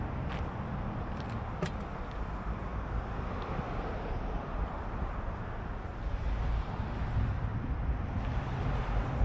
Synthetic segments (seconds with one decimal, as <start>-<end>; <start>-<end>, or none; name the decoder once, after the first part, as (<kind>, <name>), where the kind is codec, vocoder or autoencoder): 0.0-2.7 (vocoder, BigVGAN v2); 4.6-7.5; 8.4-9.2